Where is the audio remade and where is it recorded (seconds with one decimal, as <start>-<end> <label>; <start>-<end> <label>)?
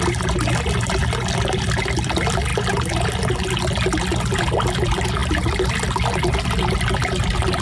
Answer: 0.0-7.6 recorded